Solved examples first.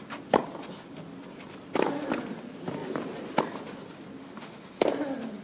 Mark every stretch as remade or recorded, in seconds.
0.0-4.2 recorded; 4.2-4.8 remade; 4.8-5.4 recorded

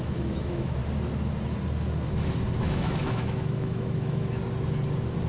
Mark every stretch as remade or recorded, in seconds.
0.0-0.8 remade; 0.8-2.6 recorded; 2.6-4.4 remade; 4.4-5.3 recorded

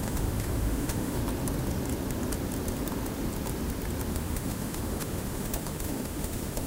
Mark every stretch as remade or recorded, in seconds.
0.0-1.2 remade; 1.2-4.1 recorded; 4.1-6.7 remade

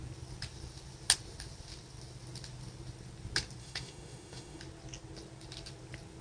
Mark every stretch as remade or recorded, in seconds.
0.0-3.6 recorded; 3.6-4.6 remade; 4.6-6.2 recorded